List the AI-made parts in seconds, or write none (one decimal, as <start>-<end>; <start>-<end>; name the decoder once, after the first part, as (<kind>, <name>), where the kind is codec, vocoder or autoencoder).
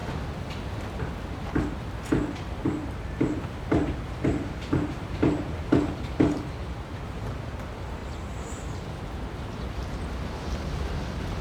2.8-3.4 (vocoder, BigVGAN v2)